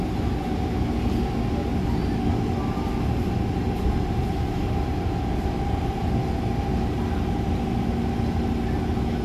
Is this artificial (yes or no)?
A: no